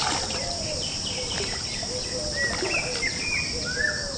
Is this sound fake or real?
real